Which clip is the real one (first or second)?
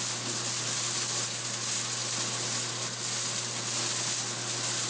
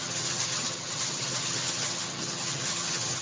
first